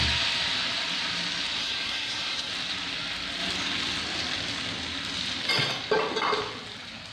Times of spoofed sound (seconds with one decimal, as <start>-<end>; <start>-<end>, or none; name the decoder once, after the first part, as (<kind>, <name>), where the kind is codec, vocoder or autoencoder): 1.6-2.5 (codec, SNAC)